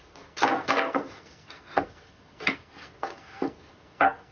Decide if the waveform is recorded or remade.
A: remade